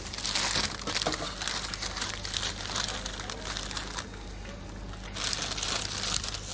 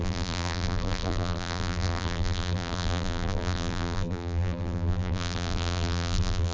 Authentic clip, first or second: first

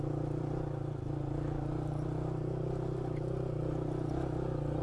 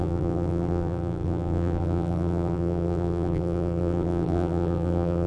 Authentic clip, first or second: first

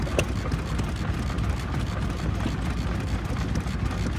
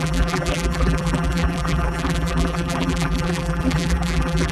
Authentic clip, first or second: first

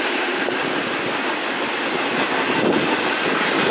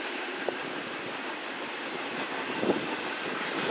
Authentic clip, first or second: first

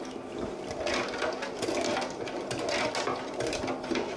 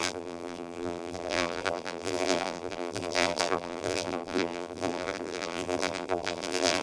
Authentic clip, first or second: first